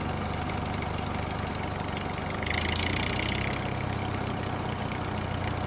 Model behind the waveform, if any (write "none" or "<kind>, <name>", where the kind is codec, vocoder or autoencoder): none